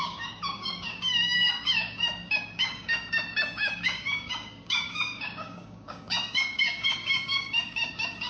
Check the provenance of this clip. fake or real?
fake